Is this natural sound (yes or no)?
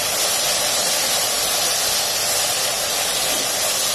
yes